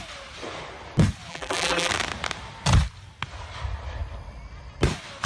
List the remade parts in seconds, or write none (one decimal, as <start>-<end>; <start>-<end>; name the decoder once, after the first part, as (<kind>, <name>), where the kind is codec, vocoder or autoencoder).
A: 1.3-1.9 (vocoder, BigVGAN v2)